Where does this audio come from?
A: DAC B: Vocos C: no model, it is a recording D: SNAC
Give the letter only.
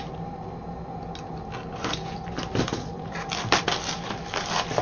C